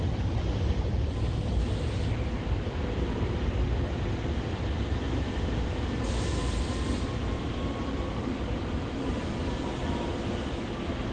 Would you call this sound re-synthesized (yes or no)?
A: no